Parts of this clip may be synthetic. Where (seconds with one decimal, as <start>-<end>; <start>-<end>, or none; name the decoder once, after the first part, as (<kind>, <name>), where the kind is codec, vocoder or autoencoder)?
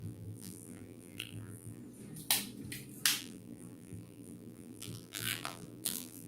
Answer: 0.0-1.8 (vocoder, BigVGAN v2); 3.2-6.3